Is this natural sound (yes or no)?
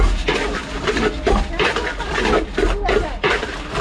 yes